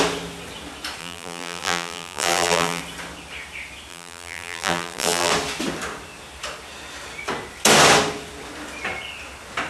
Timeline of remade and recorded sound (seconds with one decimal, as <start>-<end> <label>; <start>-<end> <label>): 0.0-1.0 recorded; 1.0-2.8 remade; 2.8-3.9 recorded; 3.9-5.3 remade; 5.3-9.7 recorded